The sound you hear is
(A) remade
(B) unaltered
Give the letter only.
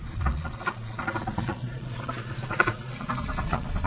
A